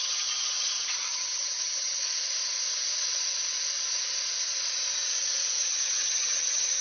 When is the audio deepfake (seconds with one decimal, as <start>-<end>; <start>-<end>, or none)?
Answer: 0.0-2.0; 5.7-6.8

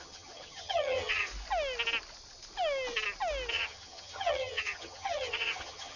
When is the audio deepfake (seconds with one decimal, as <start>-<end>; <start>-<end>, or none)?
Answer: 0.0-1.3; 3.5-6.0